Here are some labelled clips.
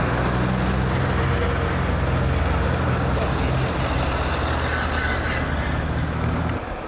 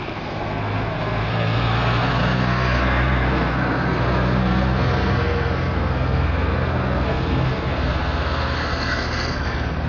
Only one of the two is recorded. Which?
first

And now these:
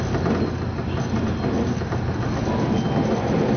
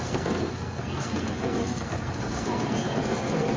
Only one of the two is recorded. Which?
first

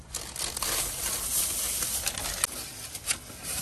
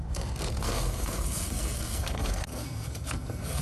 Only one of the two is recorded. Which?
first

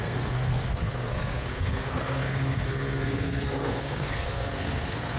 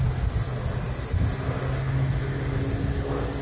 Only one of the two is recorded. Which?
second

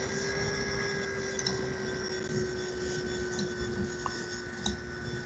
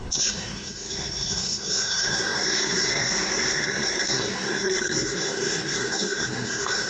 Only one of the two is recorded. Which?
first